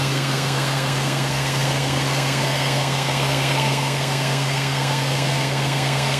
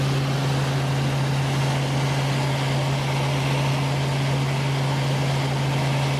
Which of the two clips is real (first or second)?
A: second